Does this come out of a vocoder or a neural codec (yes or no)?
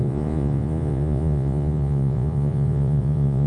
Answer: yes